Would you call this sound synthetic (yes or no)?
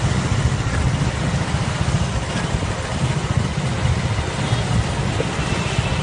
no